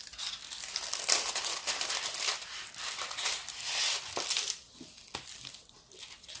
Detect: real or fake real